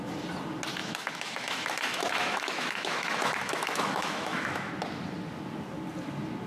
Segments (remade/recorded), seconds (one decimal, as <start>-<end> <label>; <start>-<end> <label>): 0.0-0.8 recorded; 0.8-4.7 remade; 4.7-6.5 recorded